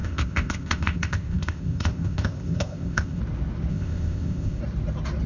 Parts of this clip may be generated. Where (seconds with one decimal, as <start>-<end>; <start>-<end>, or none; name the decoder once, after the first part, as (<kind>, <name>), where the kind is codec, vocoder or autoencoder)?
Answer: 0.0-3.2 (codec, ZipCodec); 3.7-4.6